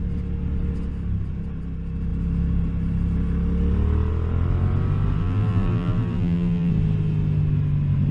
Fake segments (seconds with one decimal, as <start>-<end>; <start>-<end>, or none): 5.2-6.7